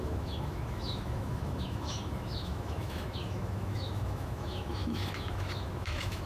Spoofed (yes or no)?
yes